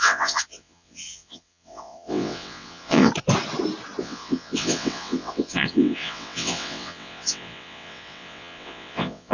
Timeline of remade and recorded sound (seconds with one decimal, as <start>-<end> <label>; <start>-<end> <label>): 0.0-3.1 remade; 3.1-4.0 recorded; 4.0-9.3 remade

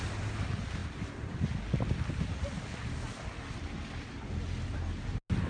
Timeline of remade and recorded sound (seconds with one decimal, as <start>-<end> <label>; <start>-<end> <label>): 0.0-5.5 recorded

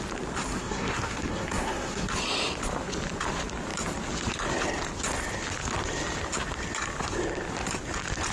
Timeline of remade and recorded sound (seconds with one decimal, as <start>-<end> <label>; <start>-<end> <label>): 0.0-0.5 recorded; 0.5-2.1 remade; 2.1-8.3 recorded

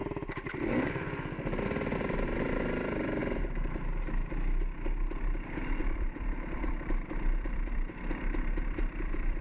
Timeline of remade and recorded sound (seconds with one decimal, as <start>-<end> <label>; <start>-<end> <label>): 0.0-3.2 remade; 3.2-5.8 recorded; 5.8-9.4 remade

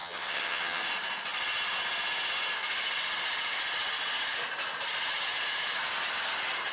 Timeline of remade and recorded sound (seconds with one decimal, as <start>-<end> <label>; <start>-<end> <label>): 0.0-0.8 remade; 0.8-6.7 recorded

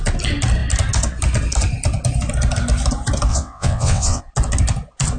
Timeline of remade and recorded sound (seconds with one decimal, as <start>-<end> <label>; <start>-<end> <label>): 0.0-3.3 recorded; 3.3-4.2 remade; 4.2-5.2 recorded

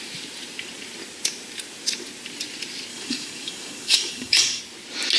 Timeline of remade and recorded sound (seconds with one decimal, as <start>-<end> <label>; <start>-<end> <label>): 0.0-2.9 recorded; 2.9-4.6 remade; 4.6-5.2 recorded